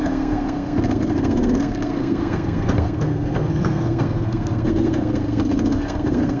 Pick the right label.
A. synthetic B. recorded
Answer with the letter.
A